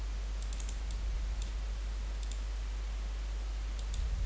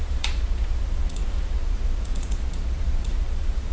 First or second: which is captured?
first